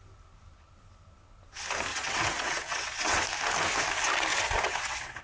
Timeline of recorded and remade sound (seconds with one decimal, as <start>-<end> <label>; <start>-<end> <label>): 0.0-1.9 recorded; 1.9-3.2 remade; 3.2-4.3 recorded; 4.3-5.2 remade